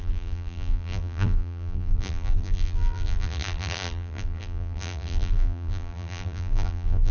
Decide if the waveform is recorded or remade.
remade